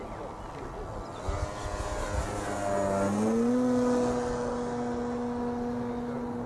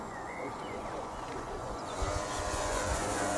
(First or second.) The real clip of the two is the first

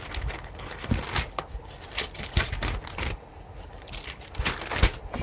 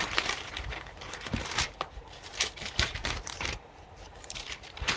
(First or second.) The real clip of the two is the first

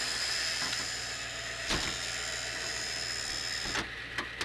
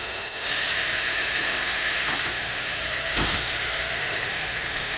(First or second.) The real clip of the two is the first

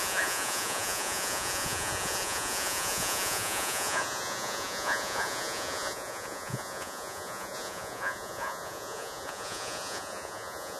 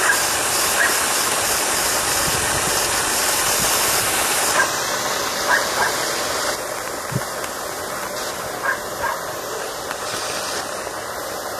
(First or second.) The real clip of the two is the second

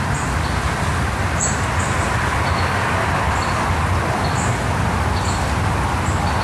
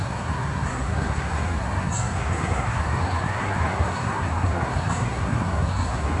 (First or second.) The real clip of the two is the first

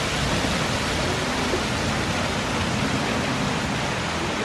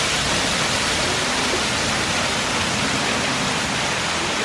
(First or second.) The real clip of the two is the first